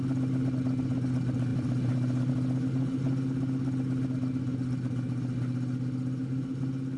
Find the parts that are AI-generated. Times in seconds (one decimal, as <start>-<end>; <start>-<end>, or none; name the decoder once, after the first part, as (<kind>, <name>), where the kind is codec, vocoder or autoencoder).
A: 1.5-2.3 (vocoder, BigVGAN v2)